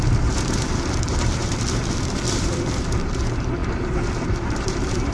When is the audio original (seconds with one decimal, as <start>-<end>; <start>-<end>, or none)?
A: none